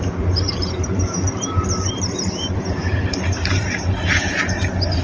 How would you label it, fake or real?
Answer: fake